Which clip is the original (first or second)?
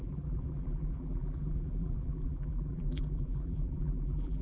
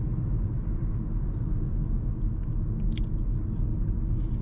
second